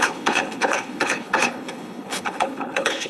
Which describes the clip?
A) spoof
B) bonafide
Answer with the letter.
A